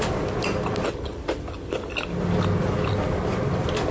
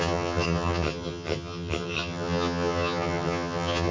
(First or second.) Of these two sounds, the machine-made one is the second